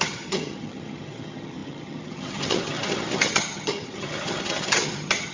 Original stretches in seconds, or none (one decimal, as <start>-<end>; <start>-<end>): none